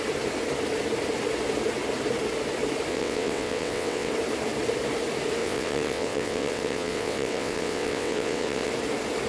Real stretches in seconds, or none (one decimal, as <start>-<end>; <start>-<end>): 0.0-2.9; 4.1-5.4; 8.7-9.3